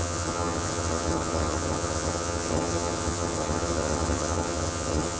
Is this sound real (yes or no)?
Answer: no